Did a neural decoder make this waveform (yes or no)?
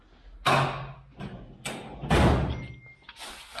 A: no